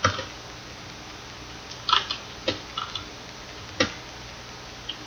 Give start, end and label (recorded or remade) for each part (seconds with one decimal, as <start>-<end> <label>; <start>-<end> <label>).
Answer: 0.0-5.1 recorded